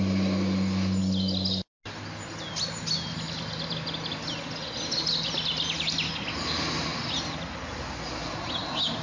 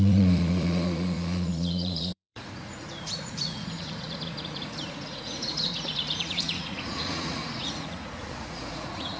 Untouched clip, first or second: first